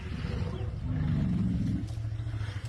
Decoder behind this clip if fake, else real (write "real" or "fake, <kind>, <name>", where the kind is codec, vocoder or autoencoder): real